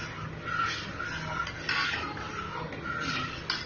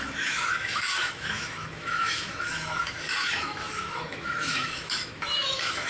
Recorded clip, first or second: first